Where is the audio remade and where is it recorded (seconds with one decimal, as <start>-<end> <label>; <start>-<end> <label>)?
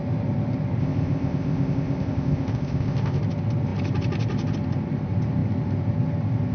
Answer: 0.0-0.8 recorded; 0.8-3.2 remade; 3.2-6.5 recorded